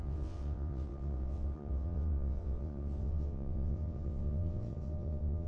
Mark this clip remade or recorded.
remade